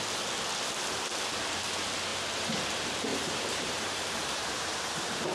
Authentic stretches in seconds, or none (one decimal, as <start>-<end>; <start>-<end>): 0.0-3.1